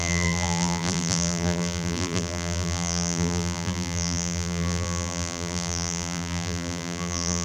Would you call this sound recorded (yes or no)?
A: no